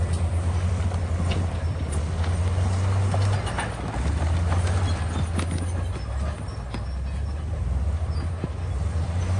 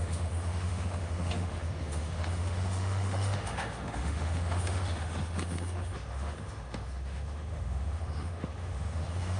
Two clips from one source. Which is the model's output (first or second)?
second